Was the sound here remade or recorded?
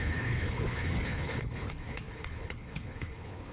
remade